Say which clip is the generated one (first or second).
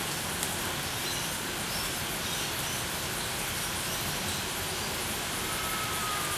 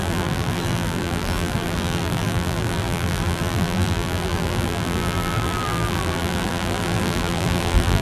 second